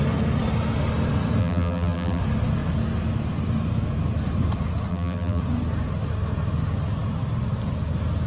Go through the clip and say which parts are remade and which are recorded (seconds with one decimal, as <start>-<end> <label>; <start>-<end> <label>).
0.0-1.4 recorded; 1.4-2.2 remade; 2.2-4.9 recorded; 4.9-5.4 remade; 5.4-8.3 recorded